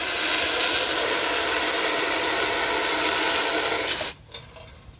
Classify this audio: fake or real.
real